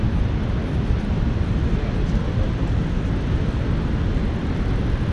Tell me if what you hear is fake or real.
real